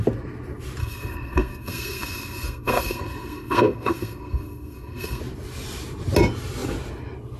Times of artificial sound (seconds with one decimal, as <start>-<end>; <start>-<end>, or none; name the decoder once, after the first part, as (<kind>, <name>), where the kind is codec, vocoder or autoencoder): 0.8-5.2 (codec, SNAC)

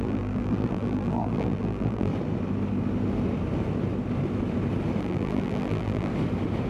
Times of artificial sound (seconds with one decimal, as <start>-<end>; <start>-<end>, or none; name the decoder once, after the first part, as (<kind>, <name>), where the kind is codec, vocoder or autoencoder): 0.0-2.1 (vocoder, BigVGAN v2); 5.0-6.1